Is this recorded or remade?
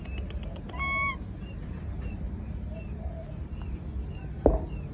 recorded